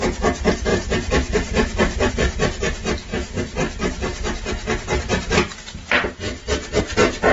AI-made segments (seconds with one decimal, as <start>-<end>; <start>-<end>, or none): 0.7-2.1